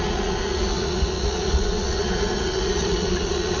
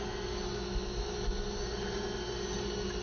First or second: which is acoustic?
second